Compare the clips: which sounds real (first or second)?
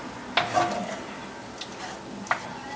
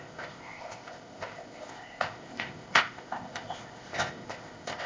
first